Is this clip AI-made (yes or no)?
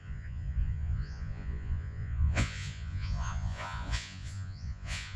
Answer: yes